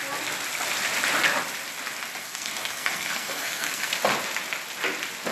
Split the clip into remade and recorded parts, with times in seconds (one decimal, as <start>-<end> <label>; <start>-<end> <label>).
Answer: 0.0-2.2 recorded; 2.2-3.9 remade; 3.9-5.3 recorded